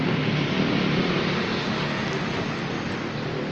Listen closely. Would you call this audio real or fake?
real